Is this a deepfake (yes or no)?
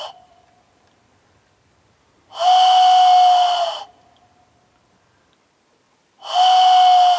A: no